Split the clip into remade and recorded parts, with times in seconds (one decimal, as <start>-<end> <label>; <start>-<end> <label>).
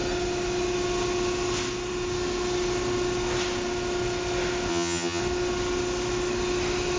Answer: 0.0-4.7 recorded; 4.7-5.2 remade; 5.2-7.0 recorded